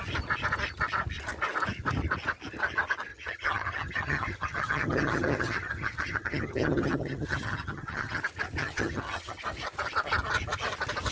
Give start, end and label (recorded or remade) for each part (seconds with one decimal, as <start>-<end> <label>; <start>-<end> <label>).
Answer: 0.0-3.1 recorded; 3.1-8.2 remade; 8.2-8.6 recorded; 8.6-9.4 remade; 9.4-11.1 recorded